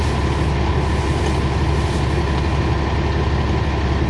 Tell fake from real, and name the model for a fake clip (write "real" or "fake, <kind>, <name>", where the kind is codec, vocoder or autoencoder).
real